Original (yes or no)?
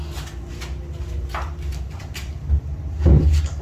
yes